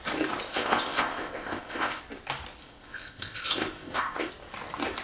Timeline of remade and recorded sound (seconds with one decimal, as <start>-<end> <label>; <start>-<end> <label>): 0.0-0.5 recorded; 0.5-2.0 remade; 2.0-2.6 recorded; 2.6-4.3 remade; 4.3-5.0 recorded